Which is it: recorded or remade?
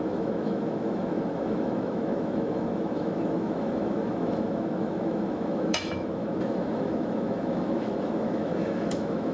remade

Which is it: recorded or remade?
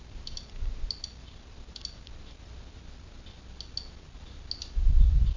recorded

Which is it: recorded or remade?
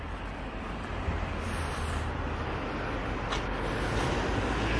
recorded